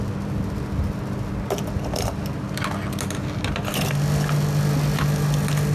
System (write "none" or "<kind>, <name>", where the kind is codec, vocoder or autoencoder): none